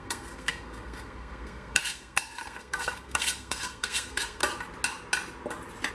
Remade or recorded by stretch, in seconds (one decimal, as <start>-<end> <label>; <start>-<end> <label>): 0.0-4.4 remade; 4.4-5.9 recorded